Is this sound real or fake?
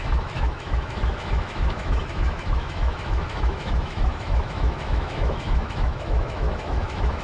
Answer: fake